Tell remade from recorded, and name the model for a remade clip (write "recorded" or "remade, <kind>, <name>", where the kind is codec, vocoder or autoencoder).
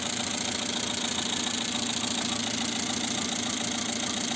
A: recorded